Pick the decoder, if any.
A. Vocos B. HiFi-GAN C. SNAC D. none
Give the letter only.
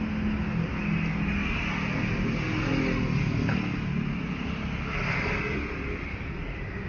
D